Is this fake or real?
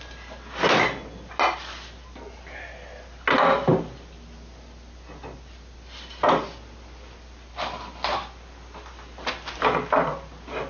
real